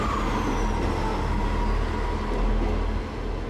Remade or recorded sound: recorded